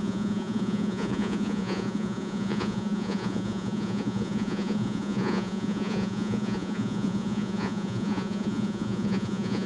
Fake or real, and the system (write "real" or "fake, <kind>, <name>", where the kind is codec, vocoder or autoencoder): fake, vocoder, Vocos